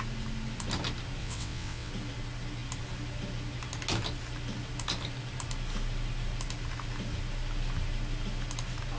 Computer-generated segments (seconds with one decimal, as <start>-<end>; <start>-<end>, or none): 1.2-1.9